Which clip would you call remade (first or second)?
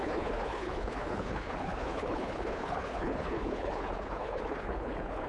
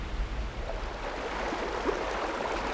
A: first